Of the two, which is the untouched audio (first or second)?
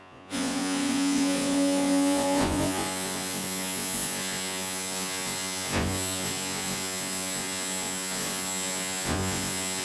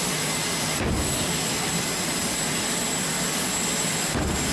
second